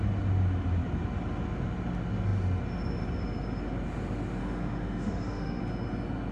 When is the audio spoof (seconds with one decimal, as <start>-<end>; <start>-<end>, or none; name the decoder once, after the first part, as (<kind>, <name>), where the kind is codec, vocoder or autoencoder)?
4.4-5.6 (autoencoder, DAC-VAE)